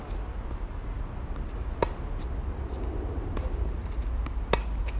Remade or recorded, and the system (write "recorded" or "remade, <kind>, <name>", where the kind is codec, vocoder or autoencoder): recorded